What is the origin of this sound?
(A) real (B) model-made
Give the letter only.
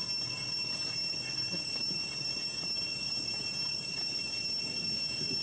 A